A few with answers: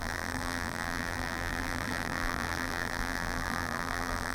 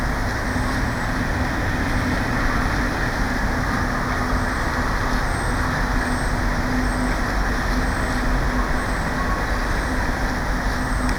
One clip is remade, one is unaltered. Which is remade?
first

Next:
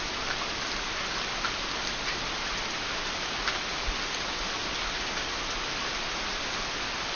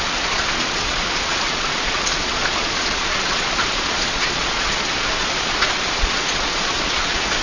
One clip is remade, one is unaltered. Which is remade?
second